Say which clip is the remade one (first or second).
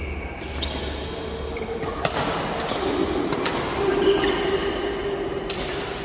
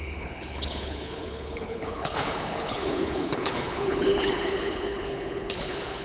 second